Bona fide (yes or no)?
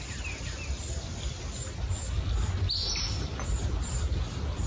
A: yes